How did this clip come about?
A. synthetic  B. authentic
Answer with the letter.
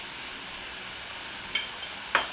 B